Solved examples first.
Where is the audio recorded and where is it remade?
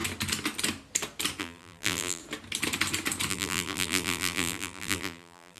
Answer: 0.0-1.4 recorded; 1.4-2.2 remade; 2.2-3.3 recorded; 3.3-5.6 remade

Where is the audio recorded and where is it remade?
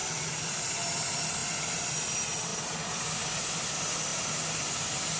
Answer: 0.0-0.7 remade; 0.7-1.4 recorded; 1.4-1.9 remade; 1.9-5.2 recorded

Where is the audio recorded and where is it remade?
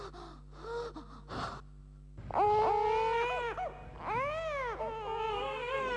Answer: 0.0-5.3 recorded; 5.3-6.0 remade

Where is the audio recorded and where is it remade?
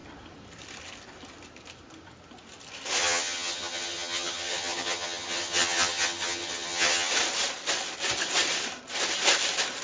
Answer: 0.0-3.0 recorded; 3.0-7.1 remade; 7.1-9.8 recorded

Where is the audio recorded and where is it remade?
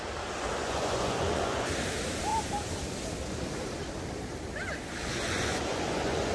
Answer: 0.0-0.6 recorded; 0.6-1.7 remade; 1.7-5.1 recorded; 5.1-6.3 remade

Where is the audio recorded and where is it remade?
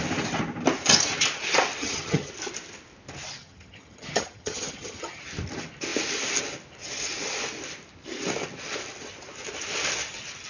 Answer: 0.0-1.8 recorded; 1.8-2.3 remade; 2.3-3.4 recorded; 3.4-5.2 remade; 5.2-10.5 recorded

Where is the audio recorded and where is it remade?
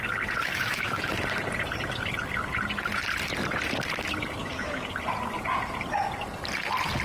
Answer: 0.0-0.5 recorded; 0.5-1.1 remade; 1.1-4.4 recorded; 4.4-4.9 remade; 4.9-7.0 recorded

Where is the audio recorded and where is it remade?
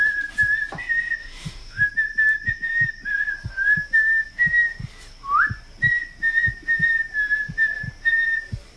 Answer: 0.0-1.2 recorded; 1.2-1.8 remade; 1.8-8.8 recorded